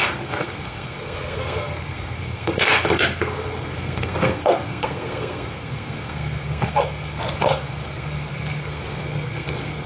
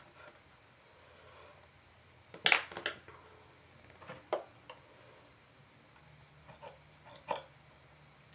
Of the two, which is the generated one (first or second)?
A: first